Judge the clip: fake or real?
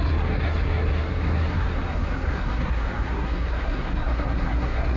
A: fake